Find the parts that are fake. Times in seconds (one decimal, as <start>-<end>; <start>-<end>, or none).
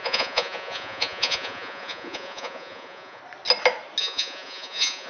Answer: 0.0-3.2; 4.0-5.1